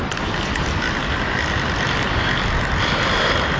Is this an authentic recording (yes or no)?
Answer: yes